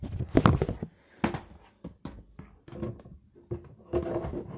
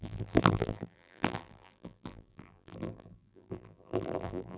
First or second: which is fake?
second